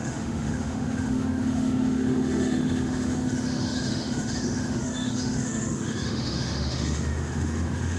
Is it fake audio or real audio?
fake